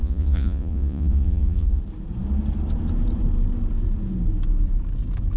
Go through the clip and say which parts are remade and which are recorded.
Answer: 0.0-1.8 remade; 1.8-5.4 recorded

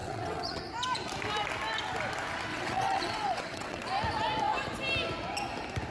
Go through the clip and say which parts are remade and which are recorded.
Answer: 0.0-0.6 remade; 0.6-2.5 recorded; 2.5-3.8 remade; 3.8-5.9 recorded

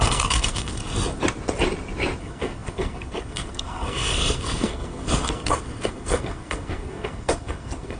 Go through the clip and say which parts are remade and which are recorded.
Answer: 0.0-0.8 remade; 0.8-2.2 recorded; 2.2-8.0 remade

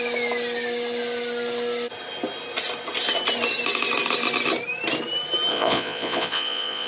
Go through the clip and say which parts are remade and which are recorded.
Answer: 0.0-5.5 recorded; 5.5-6.9 remade